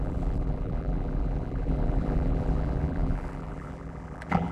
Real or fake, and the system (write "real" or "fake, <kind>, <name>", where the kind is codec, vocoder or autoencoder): fake, vocoder, BigVGAN v2